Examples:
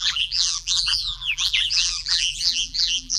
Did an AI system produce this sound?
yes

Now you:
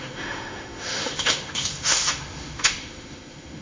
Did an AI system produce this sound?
yes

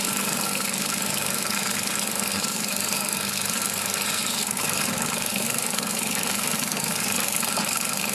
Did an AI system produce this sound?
yes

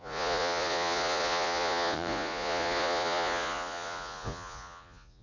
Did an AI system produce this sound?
yes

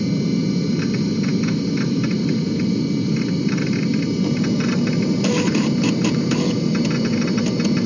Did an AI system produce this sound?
no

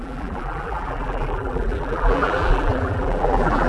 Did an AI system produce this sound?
yes